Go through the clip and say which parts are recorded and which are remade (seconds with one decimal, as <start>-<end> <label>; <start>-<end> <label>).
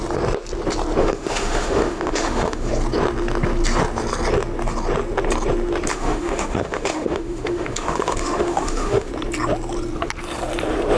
0.0-1.0 recorded; 1.0-2.7 remade; 2.7-5.9 recorded; 5.9-9.1 remade; 9.1-11.0 recorded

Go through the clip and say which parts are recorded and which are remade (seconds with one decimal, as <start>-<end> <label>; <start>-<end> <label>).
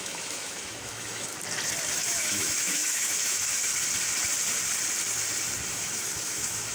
0.0-1.3 remade; 1.3-1.9 recorded; 1.9-3.7 remade; 3.7-5.7 recorded; 5.7-6.7 remade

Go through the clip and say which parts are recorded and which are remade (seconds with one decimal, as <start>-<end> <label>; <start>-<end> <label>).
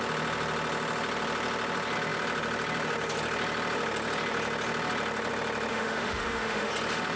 0.0-5.7 recorded; 5.7-6.7 remade; 6.7-7.2 recorded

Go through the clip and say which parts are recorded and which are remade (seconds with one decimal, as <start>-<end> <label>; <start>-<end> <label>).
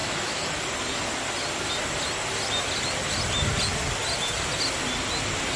0.0-0.6 remade; 0.6-5.6 recorded